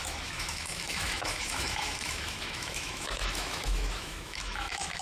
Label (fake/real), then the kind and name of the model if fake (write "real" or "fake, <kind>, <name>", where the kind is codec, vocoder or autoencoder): fake, autoencoder, DAC-VAE